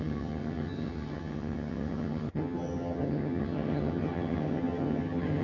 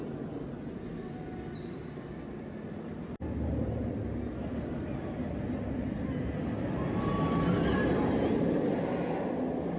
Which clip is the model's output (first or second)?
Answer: first